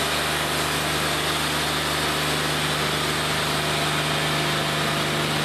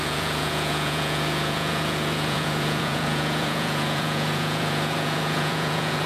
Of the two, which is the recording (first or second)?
first